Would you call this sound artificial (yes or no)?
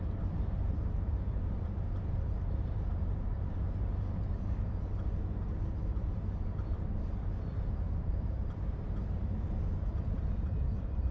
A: yes